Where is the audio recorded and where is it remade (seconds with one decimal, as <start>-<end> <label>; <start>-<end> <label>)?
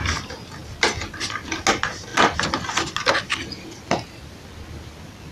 0.0-5.3 recorded